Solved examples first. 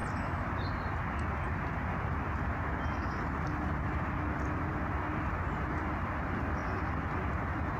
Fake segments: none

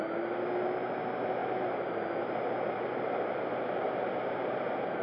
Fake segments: 1.4-2.2 (vocoder, BigVGAN v2)

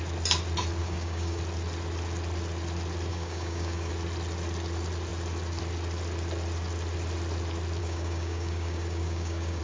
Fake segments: 0.8-1.4 (codec, DAC); 3.1-3.9; 7.8-9.6

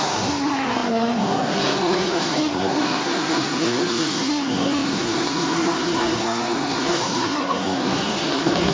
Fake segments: 0.0-8.7 (codec, SNAC)

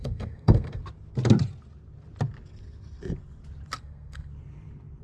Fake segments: 0.0-0.8 (codec, SNAC); 3.8-4.3